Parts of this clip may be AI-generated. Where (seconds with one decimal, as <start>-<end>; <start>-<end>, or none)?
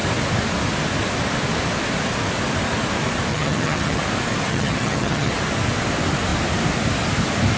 3.3-4.0; 4.5-5.3